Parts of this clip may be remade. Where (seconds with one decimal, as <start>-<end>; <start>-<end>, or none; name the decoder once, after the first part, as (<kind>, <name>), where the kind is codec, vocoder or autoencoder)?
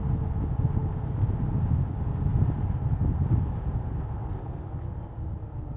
none